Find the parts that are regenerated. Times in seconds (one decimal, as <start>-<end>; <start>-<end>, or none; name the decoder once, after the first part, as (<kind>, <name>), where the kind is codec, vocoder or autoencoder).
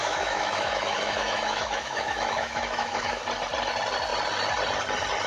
0.0-3.2 (autoencoder, DAC-VAE)